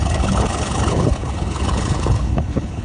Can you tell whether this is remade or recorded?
remade